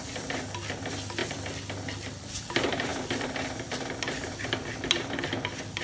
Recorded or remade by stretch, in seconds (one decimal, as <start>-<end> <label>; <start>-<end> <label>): 0.0-5.8 recorded